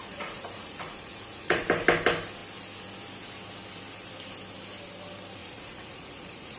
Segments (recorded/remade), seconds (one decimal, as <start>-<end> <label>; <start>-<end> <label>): 0.0-1.6 remade; 1.6-5.4 recorded; 5.4-6.6 remade